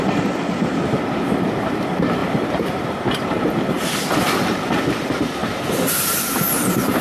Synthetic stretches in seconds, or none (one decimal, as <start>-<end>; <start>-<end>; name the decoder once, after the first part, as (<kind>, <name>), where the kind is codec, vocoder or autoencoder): 2.2-4.7 (vocoder, BigVGAN v2)